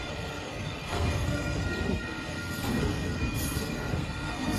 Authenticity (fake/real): fake